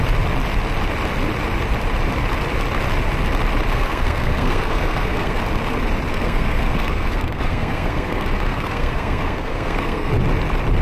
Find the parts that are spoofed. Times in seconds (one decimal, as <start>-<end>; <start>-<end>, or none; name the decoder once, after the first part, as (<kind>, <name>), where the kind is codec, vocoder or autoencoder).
3.7-5.4 (codec, SNAC); 6.1-10.1